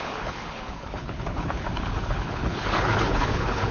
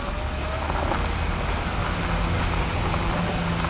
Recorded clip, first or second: second